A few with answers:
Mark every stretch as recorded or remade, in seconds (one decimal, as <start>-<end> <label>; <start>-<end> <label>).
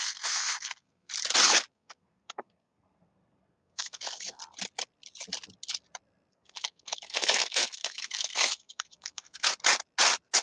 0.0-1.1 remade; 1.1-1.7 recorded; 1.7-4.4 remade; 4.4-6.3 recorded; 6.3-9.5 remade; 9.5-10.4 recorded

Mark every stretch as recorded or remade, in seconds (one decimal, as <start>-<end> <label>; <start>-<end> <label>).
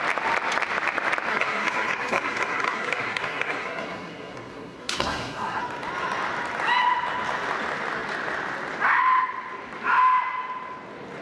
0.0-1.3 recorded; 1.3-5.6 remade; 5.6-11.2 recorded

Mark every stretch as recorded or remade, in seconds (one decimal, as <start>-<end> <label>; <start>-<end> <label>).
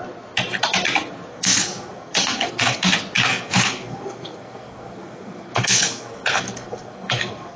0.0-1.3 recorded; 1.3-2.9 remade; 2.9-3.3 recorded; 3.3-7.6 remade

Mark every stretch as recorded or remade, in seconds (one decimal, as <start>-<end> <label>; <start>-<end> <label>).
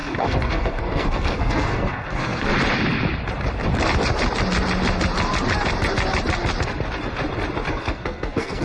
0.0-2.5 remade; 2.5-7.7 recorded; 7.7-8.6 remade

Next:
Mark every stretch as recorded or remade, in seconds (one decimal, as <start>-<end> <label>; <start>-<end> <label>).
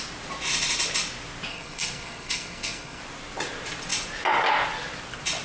0.0-1.5 recorded; 1.5-3.0 remade; 3.0-5.4 recorded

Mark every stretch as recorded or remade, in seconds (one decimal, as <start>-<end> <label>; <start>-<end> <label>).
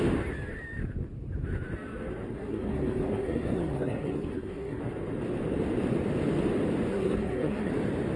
0.0-2.3 recorded; 2.3-4.8 remade; 4.8-6.9 recorded; 6.9-7.7 remade; 7.7-8.2 recorded